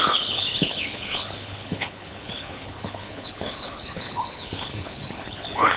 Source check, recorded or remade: remade